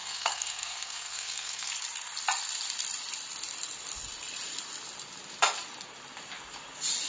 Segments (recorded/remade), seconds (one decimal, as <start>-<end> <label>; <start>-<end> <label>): 0.0-1.7 remade; 1.7-7.1 recorded